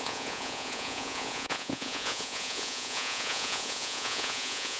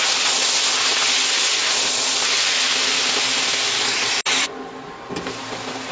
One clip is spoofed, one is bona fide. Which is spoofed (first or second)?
first